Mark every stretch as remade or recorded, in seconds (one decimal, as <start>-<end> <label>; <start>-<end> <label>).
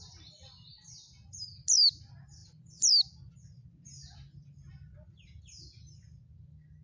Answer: 0.0-6.8 recorded